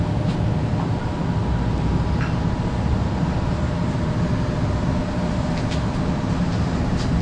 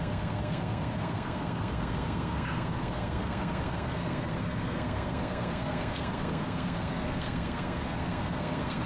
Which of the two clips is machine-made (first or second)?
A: second